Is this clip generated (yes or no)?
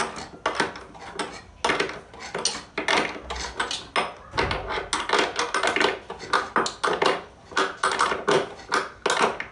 no